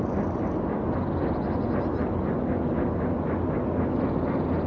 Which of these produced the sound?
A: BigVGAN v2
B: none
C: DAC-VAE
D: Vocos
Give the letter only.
B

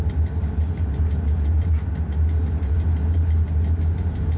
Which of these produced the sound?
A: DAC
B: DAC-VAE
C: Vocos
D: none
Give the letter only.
D